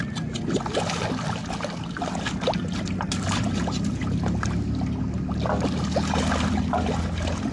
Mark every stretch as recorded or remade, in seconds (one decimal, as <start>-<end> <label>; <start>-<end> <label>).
0.0-7.5 recorded